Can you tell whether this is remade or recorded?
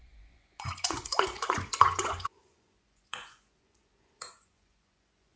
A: remade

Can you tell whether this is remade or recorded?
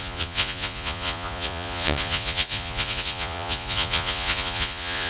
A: remade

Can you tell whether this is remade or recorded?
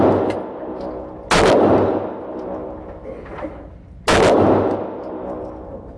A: recorded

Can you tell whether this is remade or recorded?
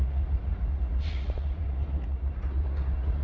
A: remade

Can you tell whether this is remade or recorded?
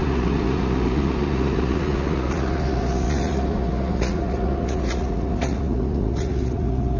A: remade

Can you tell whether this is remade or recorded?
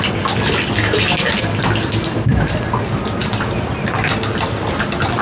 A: recorded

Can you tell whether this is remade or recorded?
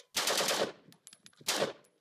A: recorded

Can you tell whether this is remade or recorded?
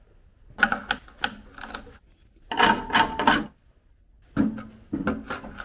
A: recorded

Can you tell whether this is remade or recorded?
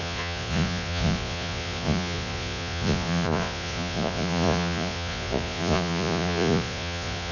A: remade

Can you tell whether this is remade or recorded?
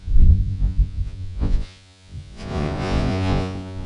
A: remade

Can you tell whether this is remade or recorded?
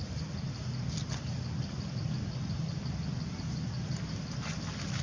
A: recorded